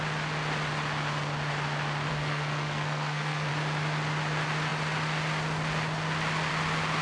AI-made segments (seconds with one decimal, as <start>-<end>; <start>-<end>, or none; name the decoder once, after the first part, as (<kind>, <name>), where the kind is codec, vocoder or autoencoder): 2.1-3.5 (codec, SNAC)